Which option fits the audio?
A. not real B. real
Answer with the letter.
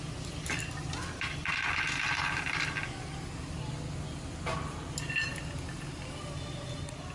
B